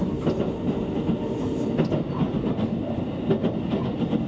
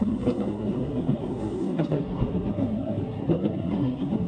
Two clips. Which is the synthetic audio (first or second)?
second